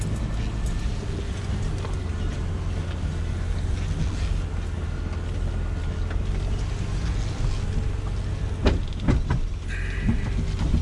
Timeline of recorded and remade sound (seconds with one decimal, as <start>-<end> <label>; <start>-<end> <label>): 0.0-10.8 recorded